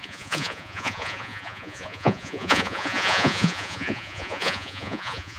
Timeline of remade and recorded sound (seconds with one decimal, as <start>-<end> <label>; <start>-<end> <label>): 0.0-5.4 remade